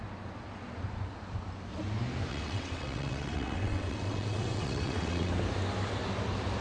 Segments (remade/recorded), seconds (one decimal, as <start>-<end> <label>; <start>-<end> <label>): 0.0-2.3 recorded; 2.3-5.3 remade; 5.3-6.6 recorded